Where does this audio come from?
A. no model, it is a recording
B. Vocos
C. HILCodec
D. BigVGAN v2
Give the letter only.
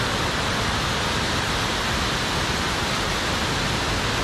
A